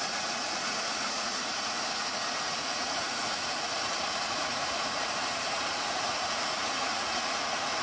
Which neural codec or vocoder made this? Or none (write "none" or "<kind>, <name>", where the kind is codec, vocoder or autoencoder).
vocoder, Vocos